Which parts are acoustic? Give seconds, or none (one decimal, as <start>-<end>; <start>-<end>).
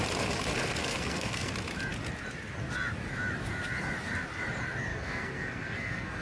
0.0-0.8; 1.5-4.9